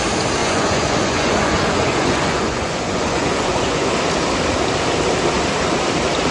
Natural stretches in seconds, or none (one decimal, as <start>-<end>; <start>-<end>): 0.0-0.4; 3.9-6.3